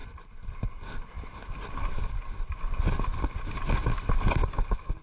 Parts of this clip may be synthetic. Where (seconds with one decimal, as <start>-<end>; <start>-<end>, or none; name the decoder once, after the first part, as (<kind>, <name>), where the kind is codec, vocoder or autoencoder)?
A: none